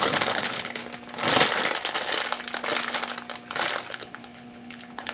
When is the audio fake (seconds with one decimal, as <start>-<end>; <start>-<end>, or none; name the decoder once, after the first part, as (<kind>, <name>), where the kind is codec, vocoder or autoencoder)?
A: 0.0-0.8 (codec, HILCodec); 3.9-5.1